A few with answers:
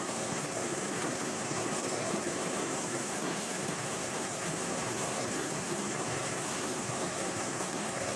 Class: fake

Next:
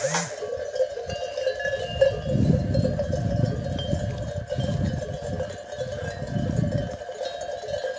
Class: real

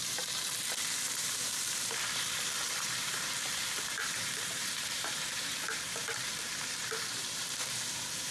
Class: fake